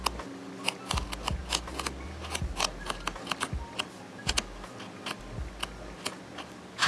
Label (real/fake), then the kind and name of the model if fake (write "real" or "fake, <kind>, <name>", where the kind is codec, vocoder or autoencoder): real